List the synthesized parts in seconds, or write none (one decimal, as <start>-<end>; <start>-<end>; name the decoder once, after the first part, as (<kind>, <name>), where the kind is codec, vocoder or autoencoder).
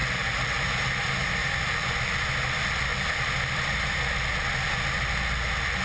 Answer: 0.0-0.5 (vocoder, BigVGAN v2); 1.4-2.2; 2.9-3.7